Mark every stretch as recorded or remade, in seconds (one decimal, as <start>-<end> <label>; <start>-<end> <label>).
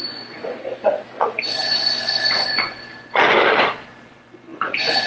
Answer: 0.0-5.1 remade